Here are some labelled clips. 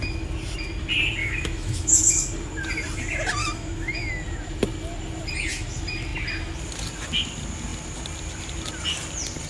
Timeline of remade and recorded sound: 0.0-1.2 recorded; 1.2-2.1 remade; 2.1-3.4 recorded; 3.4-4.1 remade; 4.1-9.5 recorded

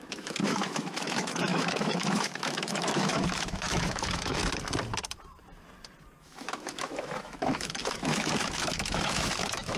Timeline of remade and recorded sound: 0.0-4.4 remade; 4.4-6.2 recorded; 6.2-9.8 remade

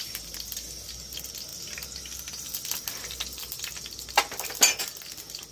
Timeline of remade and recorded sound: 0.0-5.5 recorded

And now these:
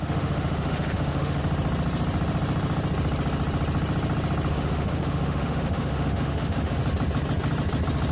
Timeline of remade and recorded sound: 0.0-1.4 remade; 1.4-4.5 recorded; 4.5-6.8 remade; 6.8-8.1 recorded

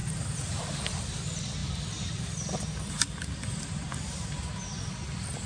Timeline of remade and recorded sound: 0.0-5.5 recorded